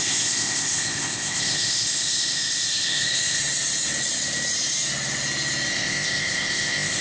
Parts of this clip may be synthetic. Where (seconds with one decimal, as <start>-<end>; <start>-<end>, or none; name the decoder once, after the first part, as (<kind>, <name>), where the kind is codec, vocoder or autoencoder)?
0.0-3.4 (codec, ZipCodec); 5.7-7.0